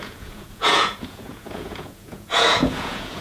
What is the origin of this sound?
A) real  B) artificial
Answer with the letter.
B